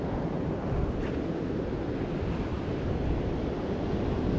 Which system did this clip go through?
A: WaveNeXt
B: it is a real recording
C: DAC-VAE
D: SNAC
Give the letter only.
B